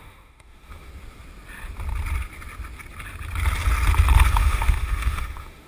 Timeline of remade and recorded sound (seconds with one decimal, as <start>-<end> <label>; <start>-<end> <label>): 0.0-0.9 remade; 0.9-4.3 recorded; 4.3-5.7 remade